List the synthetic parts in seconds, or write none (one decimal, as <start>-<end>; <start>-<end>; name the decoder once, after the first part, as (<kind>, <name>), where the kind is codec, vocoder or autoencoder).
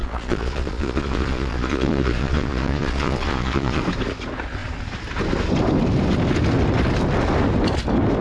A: 0.0-3.8 (vocoder, Vocos)